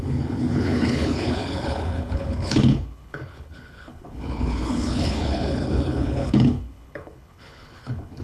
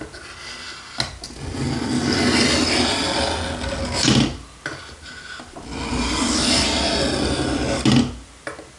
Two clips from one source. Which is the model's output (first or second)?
first